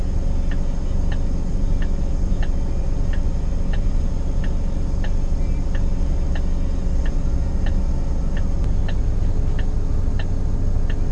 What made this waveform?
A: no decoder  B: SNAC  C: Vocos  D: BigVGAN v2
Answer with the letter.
A